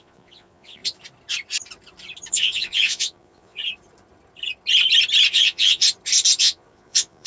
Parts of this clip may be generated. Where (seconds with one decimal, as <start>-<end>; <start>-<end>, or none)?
0.0-0.8; 2.3-3.6; 5.3-5.8; 6.4-7.3